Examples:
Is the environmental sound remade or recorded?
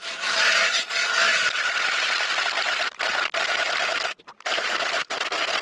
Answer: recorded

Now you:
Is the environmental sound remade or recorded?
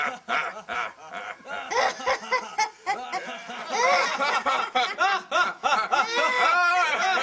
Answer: recorded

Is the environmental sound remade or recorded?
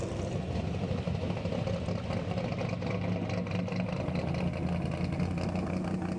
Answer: recorded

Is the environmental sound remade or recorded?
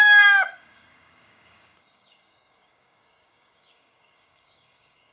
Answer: remade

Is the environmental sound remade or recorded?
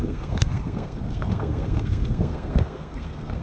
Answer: remade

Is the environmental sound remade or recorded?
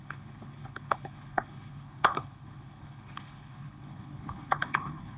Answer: remade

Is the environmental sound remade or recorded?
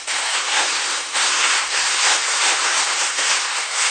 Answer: remade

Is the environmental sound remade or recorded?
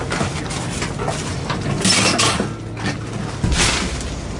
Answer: recorded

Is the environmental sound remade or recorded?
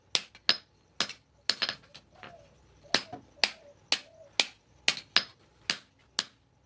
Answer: recorded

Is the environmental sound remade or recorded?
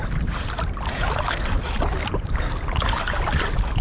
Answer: recorded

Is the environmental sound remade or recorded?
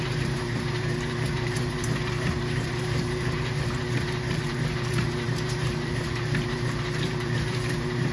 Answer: remade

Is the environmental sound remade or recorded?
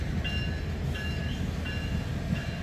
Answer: recorded